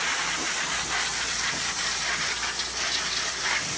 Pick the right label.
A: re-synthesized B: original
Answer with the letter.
B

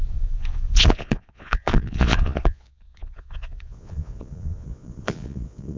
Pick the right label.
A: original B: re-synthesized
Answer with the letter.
B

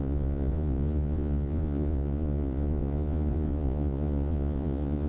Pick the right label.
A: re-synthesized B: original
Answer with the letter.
A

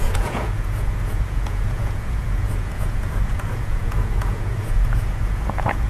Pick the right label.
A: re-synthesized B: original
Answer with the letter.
A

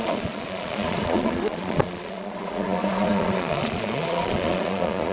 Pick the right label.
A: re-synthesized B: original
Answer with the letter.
A